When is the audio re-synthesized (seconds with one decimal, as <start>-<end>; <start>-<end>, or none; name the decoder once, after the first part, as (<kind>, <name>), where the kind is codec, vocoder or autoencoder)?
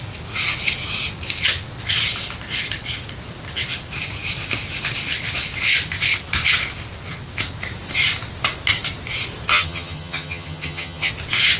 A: 9.5-11.1 (vocoder, HiFi-GAN)